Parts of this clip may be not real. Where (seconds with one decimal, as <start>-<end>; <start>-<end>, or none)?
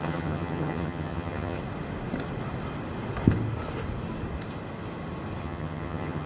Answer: 0.0-1.6; 5.4-6.3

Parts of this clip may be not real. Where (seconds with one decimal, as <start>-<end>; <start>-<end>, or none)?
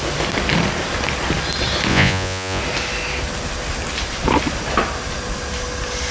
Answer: 1.9-2.6